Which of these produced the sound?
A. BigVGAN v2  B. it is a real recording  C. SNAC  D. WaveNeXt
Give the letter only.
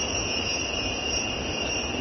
B